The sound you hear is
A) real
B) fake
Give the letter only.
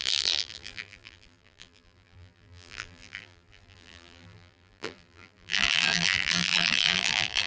B